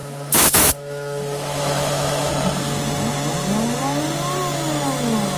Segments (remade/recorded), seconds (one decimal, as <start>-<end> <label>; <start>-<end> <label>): 0.0-2.3 remade; 2.3-5.4 recorded

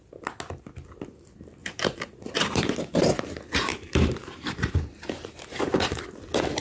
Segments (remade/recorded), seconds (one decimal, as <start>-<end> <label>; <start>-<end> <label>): 0.0-1.6 recorded; 1.6-2.6 remade; 2.6-3.7 recorded; 3.7-6.0 remade; 6.0-6.6 recorded

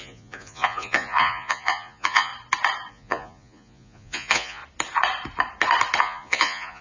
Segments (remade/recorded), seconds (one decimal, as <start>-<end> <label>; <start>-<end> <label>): 0.0-2.3 remade; 2.3-2.9 recorded; 2.9-4.6 remade; 4.6-6.0 recorded; 6.0-6.8 remade

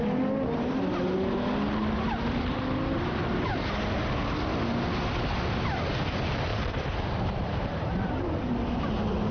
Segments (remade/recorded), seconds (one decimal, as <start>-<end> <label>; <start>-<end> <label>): 0.0-6.5 recorded; 6.5-8.1 remade; 8.1-9.3 recorded

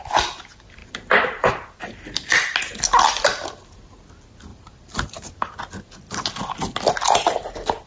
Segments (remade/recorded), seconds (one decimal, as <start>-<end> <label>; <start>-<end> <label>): 0.0-0.8 recorded; 0.8-1.5 remade; 1.5-4.5 recorded; 4.5-5.3 remade; 5.3-7.9 recorded

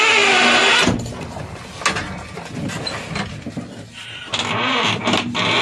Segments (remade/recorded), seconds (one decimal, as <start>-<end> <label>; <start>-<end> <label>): 0.0-5.6 recorded

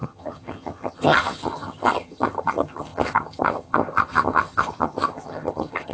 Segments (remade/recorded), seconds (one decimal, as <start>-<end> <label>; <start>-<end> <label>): 0.0-5.9 remade